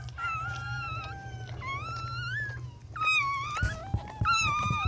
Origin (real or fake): real